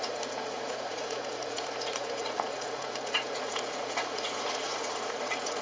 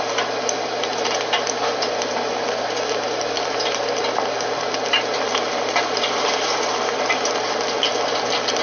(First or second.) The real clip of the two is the second